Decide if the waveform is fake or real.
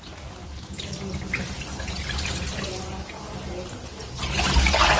real